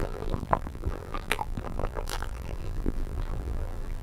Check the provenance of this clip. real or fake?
fake